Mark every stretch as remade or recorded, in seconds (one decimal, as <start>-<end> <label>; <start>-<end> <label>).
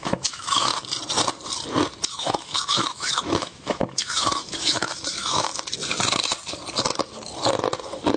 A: 0.0-0.7 remade; 0.7-2.1 recorded; 2.1-5.5 remade; 5.5-8.2 recorded